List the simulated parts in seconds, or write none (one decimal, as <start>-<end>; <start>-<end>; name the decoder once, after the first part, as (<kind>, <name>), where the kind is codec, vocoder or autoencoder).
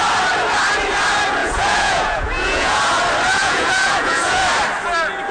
1.4-2.8 (vocoder, Vocos); 3.3-4.4